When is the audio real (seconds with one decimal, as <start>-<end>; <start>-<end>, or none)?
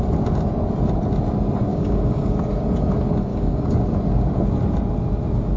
0.0-1.7; 2.3-3.3; 3.9-5.6